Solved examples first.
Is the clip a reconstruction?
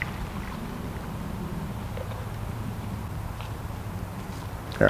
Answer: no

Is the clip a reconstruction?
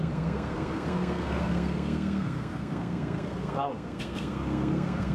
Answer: yes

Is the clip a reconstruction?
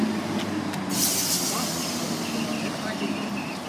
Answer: no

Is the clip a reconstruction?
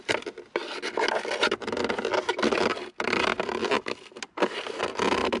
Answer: no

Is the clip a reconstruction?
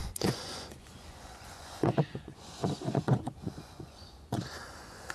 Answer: yes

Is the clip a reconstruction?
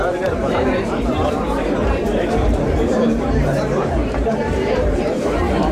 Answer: yes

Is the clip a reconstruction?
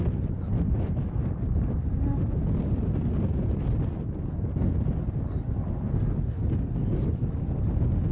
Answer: no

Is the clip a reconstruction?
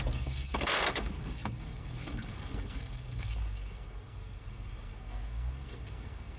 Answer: yes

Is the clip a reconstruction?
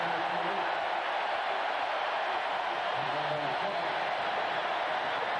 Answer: no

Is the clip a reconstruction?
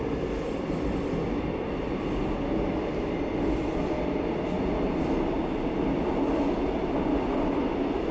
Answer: no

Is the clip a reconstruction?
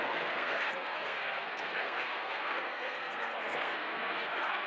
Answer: yes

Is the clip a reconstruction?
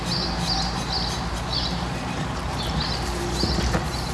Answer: yes